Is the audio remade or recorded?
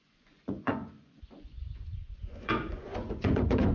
remade